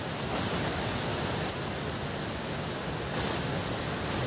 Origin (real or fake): real